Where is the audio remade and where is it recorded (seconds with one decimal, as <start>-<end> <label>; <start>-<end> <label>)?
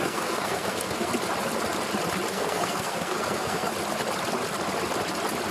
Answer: 0.0-1.1 remade; 1.1-2.3 recorded; 2.3-3.7 remade; 3.7-5.5 recorded